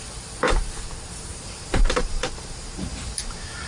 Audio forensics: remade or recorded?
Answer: remade